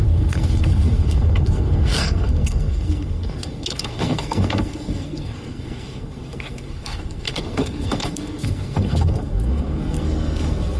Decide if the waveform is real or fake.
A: fake